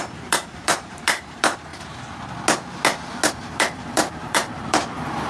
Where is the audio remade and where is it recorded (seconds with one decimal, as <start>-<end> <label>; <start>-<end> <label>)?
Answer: 0.0-1.7 remade; 1.7-3.3 recorded; 3.3-5.3 remade